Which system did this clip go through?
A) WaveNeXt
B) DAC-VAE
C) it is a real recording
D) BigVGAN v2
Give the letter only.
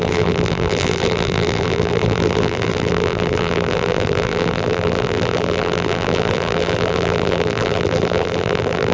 D